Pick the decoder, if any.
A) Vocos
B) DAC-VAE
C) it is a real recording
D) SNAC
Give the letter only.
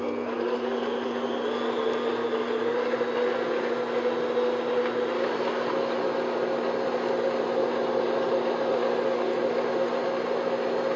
C